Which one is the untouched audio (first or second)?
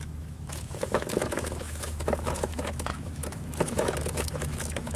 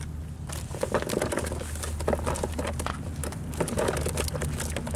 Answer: second